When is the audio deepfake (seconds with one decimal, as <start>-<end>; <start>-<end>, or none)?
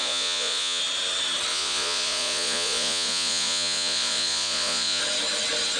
0.0-0.8; 1.5-5.0